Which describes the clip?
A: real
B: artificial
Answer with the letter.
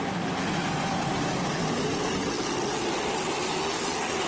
A